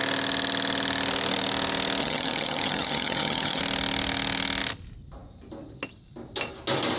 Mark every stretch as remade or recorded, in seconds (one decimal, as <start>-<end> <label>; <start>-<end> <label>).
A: 0.0-2.0 recorded; 2.0-3.6 remade; 3.6-7.0 recorded

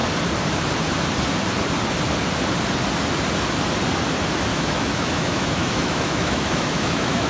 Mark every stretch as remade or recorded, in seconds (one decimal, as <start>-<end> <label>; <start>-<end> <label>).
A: 0.0-4.5 recorded; 4.5-7.3 remade

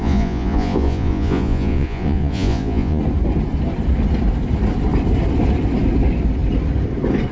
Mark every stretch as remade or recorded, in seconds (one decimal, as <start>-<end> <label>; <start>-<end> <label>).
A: 0.0-3.0 remade; 3.0-7.3 recorded

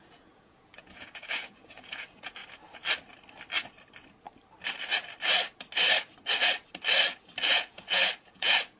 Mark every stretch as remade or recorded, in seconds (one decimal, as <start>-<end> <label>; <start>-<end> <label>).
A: 0.0-2.4 remade; 2.4-7.5 recorded; 7.5-8.8 remade

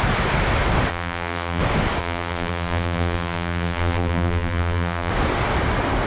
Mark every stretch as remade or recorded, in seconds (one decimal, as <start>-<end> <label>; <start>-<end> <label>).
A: 0.0-0.9 recorded; 0.9-1.6 remade; 1.6-2.0 recorded; 2.0-5.1 remade; 5.1-6.1 recorded